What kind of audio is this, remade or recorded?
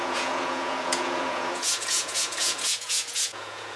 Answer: remade